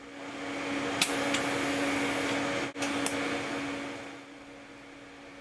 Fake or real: real